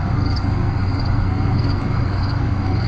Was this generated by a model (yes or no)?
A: yes